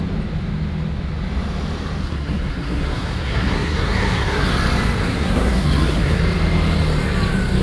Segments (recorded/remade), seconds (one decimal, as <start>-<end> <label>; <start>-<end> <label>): 0.0-2.0 recorded; 2.0-4.5 remade; 4.5-5.0 recorded; 5.0-6.2 remade; 6.2-7.6 recorded